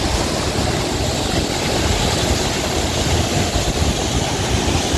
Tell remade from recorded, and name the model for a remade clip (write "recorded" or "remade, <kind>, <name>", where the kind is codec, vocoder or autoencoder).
recorded